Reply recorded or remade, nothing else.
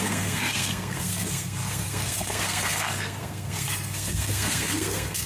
remade